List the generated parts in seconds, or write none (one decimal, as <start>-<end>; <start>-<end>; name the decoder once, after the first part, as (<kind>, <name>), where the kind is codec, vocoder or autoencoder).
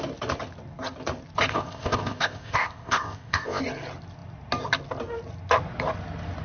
1.5-3.6 (codec, ZipCodec)